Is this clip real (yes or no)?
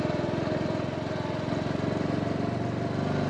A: yes